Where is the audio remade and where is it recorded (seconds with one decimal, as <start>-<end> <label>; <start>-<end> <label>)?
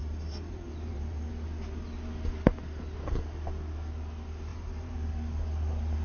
0.0-1.3 remade; 1.3-4.5 recorded; 4.5-5.1 remade; 5.1-6.0 recorded